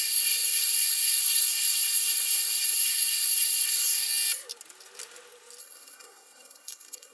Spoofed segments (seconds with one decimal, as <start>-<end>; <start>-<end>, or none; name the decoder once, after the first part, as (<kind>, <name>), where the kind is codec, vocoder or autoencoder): 0.0-4.1 (codec, SNAC); 5.6-7.1